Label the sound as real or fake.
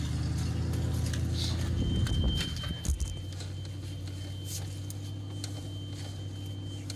real